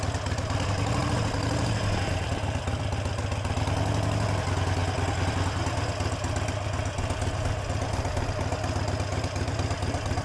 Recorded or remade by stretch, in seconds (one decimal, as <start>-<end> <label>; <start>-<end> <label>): 0.0-10.2 recorded